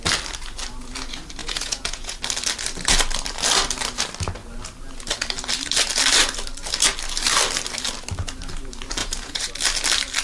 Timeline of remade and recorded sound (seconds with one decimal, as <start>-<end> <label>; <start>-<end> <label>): 0.0-1.4 recorded; 1.4-2.2 remade; 2.2-9.0 recorded; 9.0-9.5 remade; 9.5-10.2 recorded